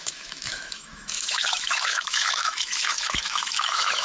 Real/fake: fake